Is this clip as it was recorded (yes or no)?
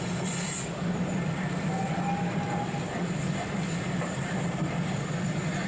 no